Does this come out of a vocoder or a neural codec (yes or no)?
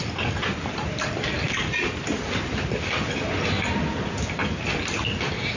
no